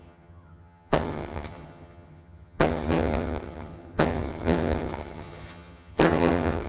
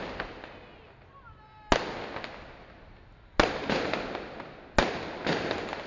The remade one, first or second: first